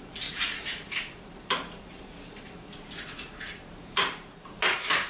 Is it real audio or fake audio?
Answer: fake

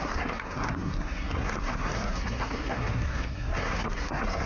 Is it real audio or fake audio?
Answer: fake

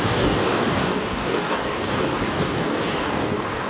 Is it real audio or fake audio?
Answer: fake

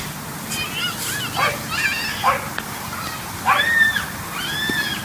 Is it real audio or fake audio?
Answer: real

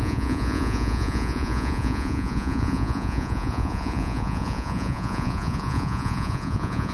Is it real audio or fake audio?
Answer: fake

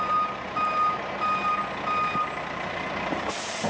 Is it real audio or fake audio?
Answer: real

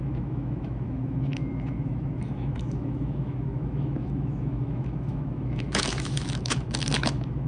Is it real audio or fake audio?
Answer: fake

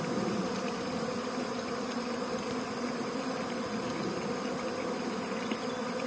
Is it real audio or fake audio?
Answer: real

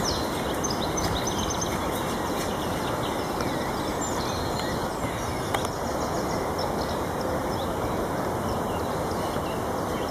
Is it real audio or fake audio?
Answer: real